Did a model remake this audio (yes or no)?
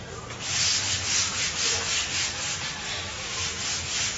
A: no